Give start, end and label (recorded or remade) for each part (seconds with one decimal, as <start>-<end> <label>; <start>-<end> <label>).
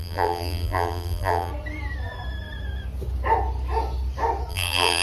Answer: 0.0-1.5 remade; 1.5-4.5 recorded; 4.5-5.0 remade